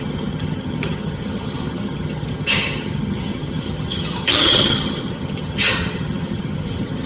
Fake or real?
fake